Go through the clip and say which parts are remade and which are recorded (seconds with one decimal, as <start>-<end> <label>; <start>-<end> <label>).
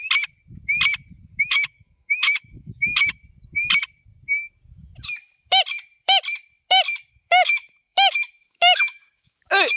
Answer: 0.0-1.4 recorded; 1.4-3.2 remade; 3.2-7.1 recorded; 7.1-9.8 remade